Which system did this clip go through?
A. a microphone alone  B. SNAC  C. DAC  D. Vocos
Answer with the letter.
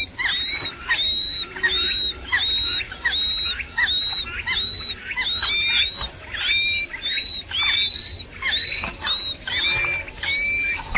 A